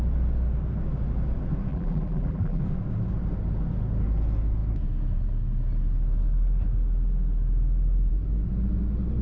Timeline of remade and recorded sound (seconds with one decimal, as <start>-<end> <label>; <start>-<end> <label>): 0.0-1.7 recorded; 1.7-2.6 remade; 2.6-9.2 recorded